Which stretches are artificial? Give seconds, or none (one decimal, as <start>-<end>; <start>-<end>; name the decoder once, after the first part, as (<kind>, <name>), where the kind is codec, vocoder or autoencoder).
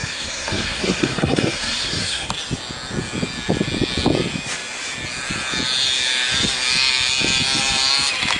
0.0-2.3 (codec, SNAC)